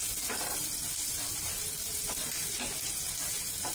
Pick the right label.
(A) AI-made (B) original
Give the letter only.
B